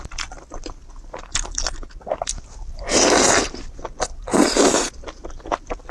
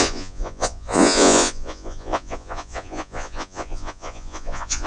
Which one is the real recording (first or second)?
first